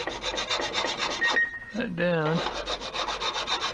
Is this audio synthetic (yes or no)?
no